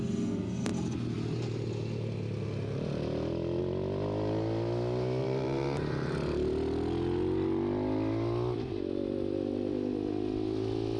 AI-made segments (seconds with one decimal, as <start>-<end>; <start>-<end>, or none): 5.2-6.5